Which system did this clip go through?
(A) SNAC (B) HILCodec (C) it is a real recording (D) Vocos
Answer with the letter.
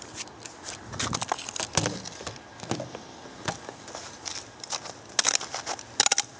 C